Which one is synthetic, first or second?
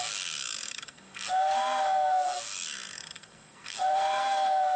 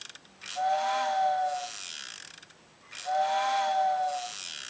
first